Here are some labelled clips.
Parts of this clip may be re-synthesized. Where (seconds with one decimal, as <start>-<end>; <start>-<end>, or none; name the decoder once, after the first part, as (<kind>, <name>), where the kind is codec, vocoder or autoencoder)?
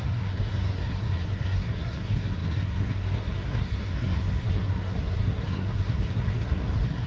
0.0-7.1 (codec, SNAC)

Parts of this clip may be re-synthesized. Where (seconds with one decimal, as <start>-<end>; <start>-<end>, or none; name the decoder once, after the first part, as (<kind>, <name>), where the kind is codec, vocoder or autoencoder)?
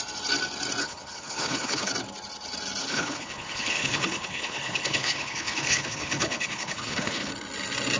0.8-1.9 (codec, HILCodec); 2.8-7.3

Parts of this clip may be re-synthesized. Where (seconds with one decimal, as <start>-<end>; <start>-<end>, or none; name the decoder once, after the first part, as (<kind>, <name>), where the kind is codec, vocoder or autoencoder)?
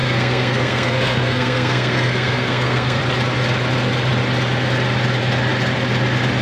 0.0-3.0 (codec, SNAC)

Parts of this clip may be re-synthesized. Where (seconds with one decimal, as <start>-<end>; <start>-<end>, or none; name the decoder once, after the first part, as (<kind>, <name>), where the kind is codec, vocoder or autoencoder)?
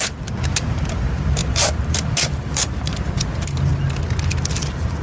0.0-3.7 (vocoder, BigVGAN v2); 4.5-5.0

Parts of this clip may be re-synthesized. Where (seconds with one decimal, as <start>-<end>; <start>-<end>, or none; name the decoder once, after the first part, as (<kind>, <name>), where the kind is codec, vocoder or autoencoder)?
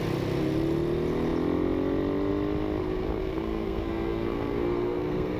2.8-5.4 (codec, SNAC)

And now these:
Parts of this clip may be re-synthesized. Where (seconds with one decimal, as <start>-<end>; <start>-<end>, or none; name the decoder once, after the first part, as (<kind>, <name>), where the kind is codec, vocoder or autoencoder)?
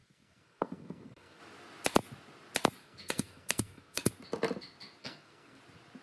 0.0-1.4 (codec, SNAC); 2.8-4.1; 5.0-5.6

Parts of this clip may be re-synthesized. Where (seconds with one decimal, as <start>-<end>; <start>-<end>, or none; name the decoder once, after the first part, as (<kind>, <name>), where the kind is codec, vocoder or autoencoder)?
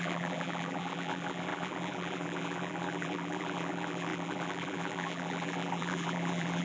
0.0-6.6 (vocoder, BigVGAN v2)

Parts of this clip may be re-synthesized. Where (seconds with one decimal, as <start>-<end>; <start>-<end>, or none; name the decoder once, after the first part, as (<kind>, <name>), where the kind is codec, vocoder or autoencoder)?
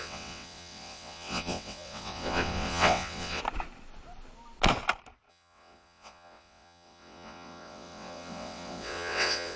0.0-3.4 (vocoder, WaveNeXt); 5.3-9.6